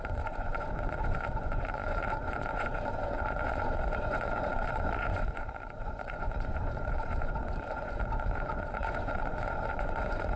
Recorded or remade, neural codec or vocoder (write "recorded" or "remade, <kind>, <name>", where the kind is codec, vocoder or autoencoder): remade, vocoder, Vocos